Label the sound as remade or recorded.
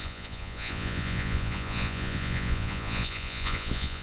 remade